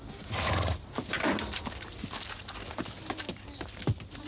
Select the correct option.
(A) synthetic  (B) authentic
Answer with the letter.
B